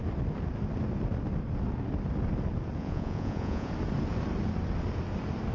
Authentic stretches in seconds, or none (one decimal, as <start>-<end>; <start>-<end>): 0.0-2.8; 3.7-5.5